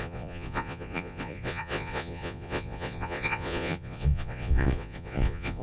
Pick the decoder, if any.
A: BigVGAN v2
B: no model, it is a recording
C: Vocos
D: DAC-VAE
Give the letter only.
C